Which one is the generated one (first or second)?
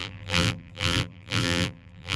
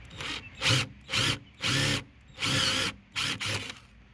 first